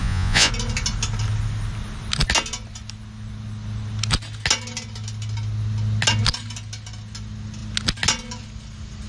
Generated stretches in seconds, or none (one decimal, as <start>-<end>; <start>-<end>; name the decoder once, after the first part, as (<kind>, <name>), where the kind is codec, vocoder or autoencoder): 0.0-0.5 (vocoder, Vocos)